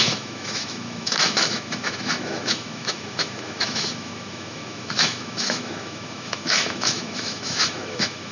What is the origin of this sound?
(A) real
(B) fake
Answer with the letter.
B